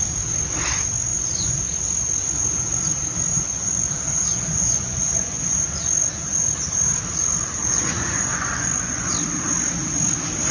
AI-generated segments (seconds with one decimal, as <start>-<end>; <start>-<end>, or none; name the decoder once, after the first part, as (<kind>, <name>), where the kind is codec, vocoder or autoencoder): 1.1-1.6 (vocoder, Vocos); 3.3-3.9; 4.3-5.4; 7.6-9.1